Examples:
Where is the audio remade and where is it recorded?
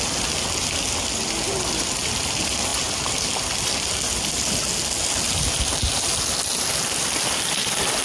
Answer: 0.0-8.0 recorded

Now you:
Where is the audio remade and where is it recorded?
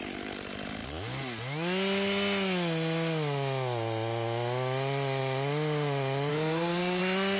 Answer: 0.0-6.3 recorded; 6.3-7.0 remade; 7.0-7.4 recorded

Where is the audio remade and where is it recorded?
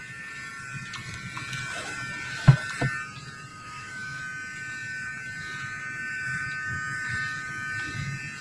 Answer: 0.0-3.5 recorded; 3.5-4.2 remade; 4.2-8.4 recorded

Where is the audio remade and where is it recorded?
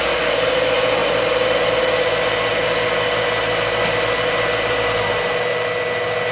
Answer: 0.0-6.3 recorded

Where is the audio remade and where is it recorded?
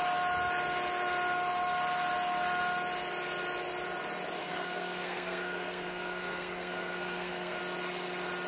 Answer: 0.0-4.4 recorded; 4.4-7.6 remade; 7.6-8.5 recorded